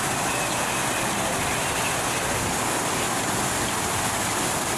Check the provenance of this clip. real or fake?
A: real